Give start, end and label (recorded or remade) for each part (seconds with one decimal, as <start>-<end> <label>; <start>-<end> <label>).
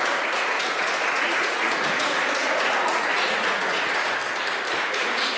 0.0-4.2 remade; 4.2-4.9 recorded; 4.9-5.4 remade